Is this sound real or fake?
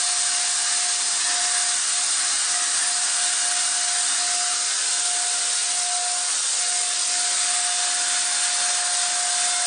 real